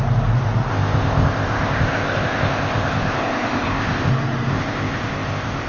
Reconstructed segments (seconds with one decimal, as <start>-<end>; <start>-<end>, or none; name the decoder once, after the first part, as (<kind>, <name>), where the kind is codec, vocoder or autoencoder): 0.7-4.1 (codec, ZipCodec); 4.5-5.7